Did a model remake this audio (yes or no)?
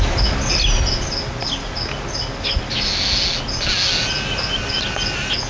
no